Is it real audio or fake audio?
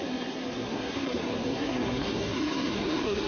fake